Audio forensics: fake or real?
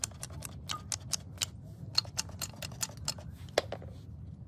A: real